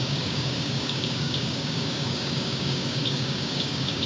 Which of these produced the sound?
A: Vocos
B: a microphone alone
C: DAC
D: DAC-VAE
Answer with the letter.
C